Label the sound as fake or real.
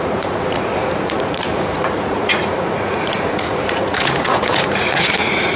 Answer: fake